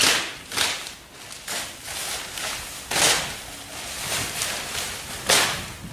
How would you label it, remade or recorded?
recorded